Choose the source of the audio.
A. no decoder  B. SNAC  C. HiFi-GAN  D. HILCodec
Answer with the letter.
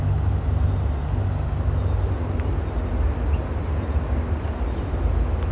A